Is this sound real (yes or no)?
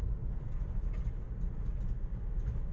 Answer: yes